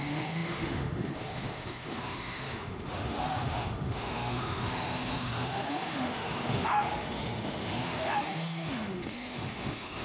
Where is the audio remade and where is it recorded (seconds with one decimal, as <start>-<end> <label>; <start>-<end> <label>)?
0.0-10.0 remade